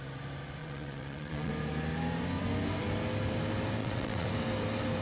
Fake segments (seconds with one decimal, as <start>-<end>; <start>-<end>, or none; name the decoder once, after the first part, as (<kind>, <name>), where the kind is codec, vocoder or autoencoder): 0.6-1.5 (vocoder, WaveNeXt); 3.8-4.3